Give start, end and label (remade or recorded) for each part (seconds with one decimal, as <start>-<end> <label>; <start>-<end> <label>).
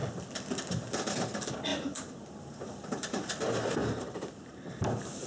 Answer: 0.0-1.7 recorded; 1.7-3.3 remade; 3.3-3.8 recorded; 3.8-4.7 remade; 4.7-5.3 recorded